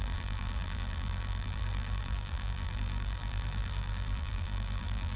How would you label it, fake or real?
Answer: fake